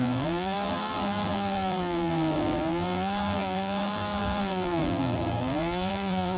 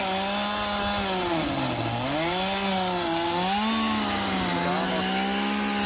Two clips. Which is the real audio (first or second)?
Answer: second